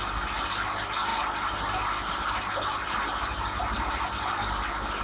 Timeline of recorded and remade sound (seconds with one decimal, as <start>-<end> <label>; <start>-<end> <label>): 0.0-5.0 recorded